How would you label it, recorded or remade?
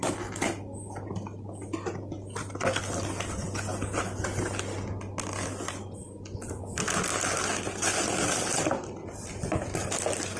recorded